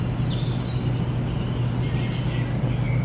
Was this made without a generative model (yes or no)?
yes